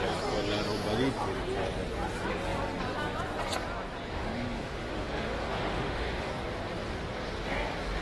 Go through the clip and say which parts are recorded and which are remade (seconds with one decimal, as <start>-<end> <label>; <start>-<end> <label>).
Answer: 0.0-4.1 recorded; 4.1-6.3 remade; 6.3-8.0 recorded